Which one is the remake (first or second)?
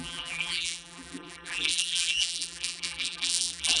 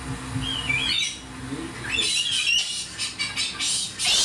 first